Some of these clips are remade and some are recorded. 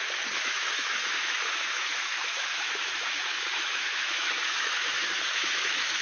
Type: remade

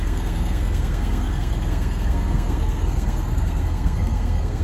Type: remade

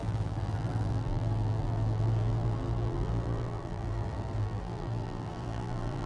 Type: remade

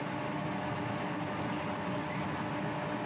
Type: recorded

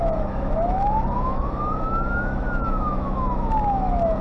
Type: remade